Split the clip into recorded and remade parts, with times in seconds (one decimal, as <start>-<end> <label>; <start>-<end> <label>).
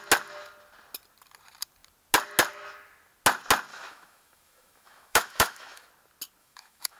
0.0-3.7 recorded; 3.7-5.9 remade; 5.9-6.4 recorded; 6.4-7.0 remade